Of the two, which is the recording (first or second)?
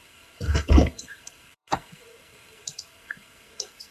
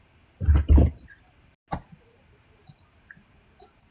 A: second